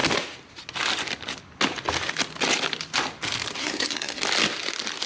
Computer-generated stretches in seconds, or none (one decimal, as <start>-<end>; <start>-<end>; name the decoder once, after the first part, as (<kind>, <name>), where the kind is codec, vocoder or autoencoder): 3.6-4.2 (codec, SNAC)